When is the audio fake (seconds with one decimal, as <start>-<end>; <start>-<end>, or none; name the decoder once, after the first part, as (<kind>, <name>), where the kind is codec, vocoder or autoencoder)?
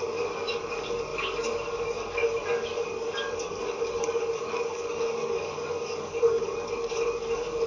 0.0-7.7 (codec, DAC)